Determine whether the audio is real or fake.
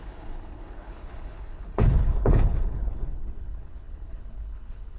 fake